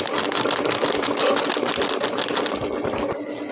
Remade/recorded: recorded